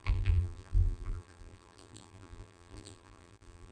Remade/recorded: remade